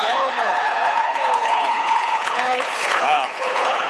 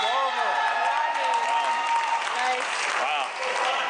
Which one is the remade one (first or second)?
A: first